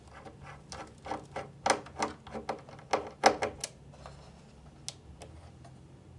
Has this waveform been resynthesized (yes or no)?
no